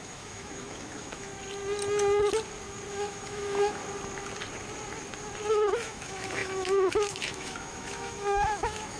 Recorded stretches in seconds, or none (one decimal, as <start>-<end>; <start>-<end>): 1.3-2.9; 3.8-5.5